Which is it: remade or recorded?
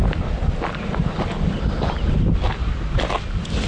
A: recorded